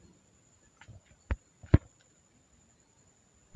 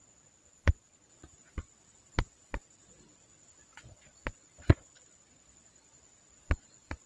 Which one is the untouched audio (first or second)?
first